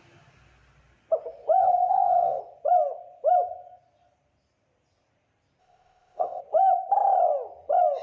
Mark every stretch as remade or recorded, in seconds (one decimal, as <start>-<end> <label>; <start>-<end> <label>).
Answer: 0.0-1.6 recorded; 1.6-2.4 remade; 2.4-5.6 recorded; 5.6-6.4 remade; 6.4-8.0 recorded

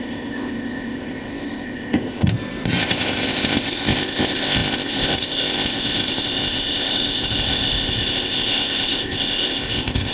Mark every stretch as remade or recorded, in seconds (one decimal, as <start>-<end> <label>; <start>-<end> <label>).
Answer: 0.0-2.3 remade; 2.3-2.8 recorded; 2.8-10.1 remade

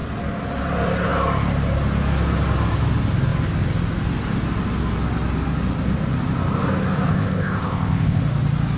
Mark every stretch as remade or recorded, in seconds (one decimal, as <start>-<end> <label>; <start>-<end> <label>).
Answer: 0.0-7.1 recorded; 7.1-8.2 remade; 8.2-8.8 recorded